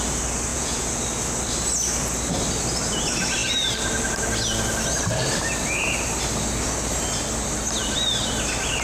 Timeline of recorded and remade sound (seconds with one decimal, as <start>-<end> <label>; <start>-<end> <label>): 0.0-0.5 recorded; 0.5-1.0 remade; 1.0-8.8 recorded